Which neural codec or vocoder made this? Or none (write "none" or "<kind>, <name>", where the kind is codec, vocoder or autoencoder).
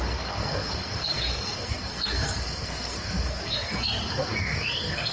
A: codec, SNAC